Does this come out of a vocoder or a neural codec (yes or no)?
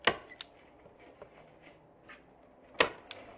no